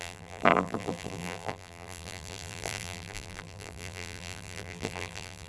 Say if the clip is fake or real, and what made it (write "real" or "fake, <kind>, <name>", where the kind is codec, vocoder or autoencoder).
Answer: fake, vocoder, BigVGAN v2